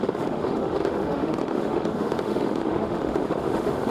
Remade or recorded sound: remade